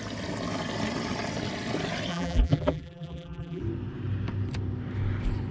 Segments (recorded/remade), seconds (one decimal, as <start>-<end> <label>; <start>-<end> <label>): 0.0-2.1 recorded; 2.1-3.6 remade; 3.6-5.5 recorded